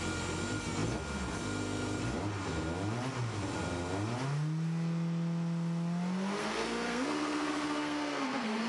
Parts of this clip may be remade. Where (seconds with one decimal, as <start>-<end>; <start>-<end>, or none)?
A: 6.4-8.7